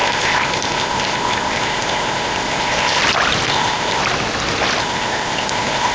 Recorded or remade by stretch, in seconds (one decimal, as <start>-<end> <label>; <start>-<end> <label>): 0.0-3.0 remade; 3.0-3.5 recorded; 3.5-4.0 remade; 4.0-4.8 recorded; 4.8-5.9 remade